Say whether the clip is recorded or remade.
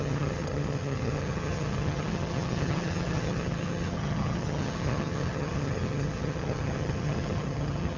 remade